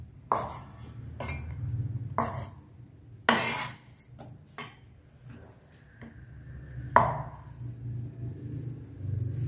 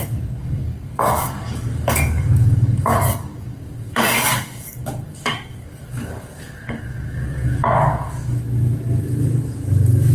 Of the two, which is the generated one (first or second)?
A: second